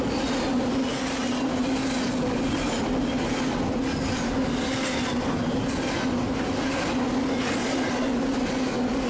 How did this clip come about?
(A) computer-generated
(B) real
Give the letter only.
B